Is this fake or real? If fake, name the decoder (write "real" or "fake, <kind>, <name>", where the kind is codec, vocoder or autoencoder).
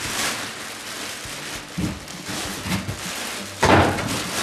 real